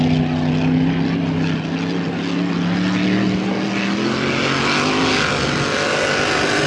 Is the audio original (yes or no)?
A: yes